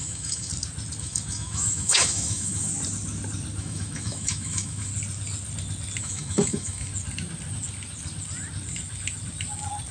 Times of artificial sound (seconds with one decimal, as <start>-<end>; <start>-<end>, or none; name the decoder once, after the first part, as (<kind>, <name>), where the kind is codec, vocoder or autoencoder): 0.0-0.5 (autoencoder, DAC-VAE); 1.0-2.7; 3.6-4.9; 6.0-6.9